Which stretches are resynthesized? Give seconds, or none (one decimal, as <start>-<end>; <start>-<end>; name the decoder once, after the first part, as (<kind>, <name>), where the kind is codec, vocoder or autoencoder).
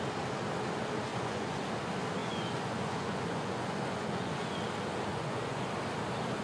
1.1-1.6 (vocoder, Vocos); 2.2-4.6; 5.1-5.7